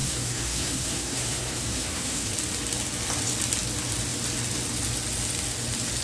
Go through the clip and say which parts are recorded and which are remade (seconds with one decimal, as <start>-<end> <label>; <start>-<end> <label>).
0.0-2.3 remade; 2.3-6.0 recorded